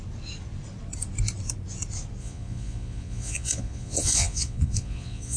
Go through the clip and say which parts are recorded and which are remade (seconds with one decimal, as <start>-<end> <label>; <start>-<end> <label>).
0.0-2.2 recorded; 2.2-5.4 remade